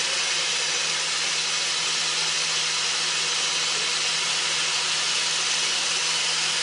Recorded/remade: recorded